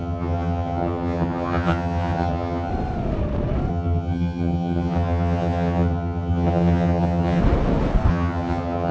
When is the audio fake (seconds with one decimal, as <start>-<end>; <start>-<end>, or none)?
0.0-2.7; 3.7-7.4; 8.1-8.9